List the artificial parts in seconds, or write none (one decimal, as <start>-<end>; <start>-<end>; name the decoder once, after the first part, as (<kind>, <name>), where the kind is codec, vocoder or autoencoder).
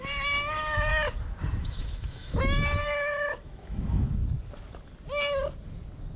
0.0-0.9 (autoencoder, DAC-VAE); 1.6-2.8; 3.4-4.2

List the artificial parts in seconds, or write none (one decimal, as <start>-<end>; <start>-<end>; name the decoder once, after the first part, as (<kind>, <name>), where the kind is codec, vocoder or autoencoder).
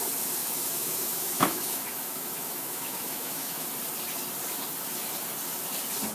0.4-3.7 (autoencoder, DAC-VAE)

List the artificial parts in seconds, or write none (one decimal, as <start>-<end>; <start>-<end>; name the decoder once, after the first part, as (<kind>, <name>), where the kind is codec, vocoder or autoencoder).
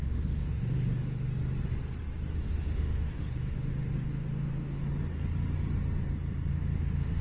0.0-1.3 (autoencoder, DAC-VAE); 2.3-4.8; 6.5-7.2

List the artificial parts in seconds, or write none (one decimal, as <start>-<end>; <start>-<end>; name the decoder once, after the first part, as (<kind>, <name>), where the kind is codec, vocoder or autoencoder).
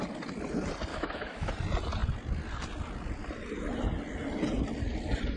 0.9-1.5 (autoencoder, DAC-VAE)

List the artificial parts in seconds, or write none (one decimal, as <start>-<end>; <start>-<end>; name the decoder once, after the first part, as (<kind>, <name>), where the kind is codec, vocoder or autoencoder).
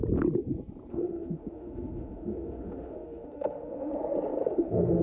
0.9-3.9 (autoencoder, DAC-VAE); 4.4-5.0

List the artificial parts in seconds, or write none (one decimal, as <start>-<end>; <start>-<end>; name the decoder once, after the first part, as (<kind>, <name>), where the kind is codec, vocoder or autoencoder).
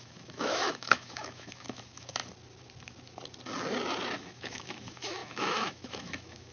0.0-2.2 (autoencoder, DAC-VAE); 4.2-6.5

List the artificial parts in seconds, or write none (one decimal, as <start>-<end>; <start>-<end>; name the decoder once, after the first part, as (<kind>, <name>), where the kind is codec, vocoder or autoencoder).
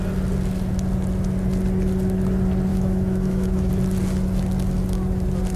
2.7-3.7 (autoencoder, DAC-VAE)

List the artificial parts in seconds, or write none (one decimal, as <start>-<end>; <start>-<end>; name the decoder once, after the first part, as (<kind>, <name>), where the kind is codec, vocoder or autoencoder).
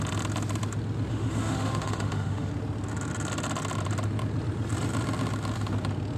1.1-2.5 (autoencoder, DAC-VAE)